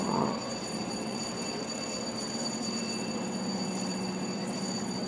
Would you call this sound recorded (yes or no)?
no